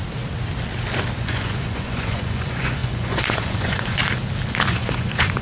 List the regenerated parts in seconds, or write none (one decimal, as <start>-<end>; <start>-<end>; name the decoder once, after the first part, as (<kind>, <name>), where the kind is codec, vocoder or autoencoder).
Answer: 1.2-4.0 (vocoder, Vocos); 4.7-5.4